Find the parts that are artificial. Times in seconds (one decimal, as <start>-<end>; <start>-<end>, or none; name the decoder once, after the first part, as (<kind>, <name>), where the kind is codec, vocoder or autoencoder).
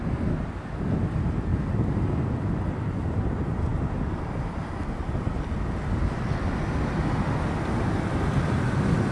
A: none